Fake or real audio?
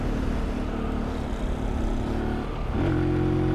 real